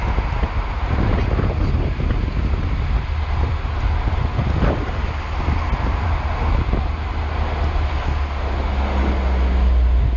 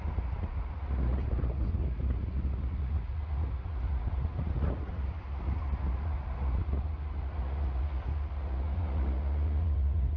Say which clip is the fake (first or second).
second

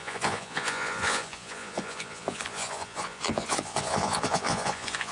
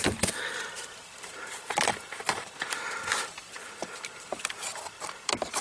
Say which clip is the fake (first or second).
first